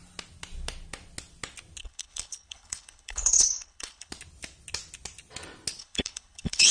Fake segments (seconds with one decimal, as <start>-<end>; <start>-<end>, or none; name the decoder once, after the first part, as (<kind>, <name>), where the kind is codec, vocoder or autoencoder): 1.8-4.1 (codec, HILCodec); 5.8-6.7